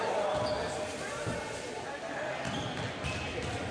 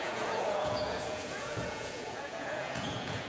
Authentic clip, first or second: first